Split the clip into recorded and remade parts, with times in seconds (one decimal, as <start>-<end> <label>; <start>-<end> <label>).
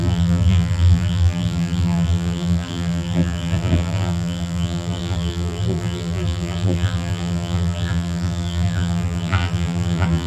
0.0-10.3 remade